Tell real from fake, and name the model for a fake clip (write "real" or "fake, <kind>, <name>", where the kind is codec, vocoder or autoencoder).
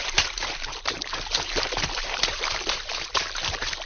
fake, vocoder, BigVGAN v2